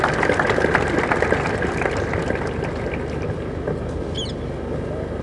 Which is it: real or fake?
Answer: real